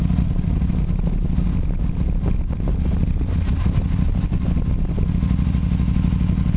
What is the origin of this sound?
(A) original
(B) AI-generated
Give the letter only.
A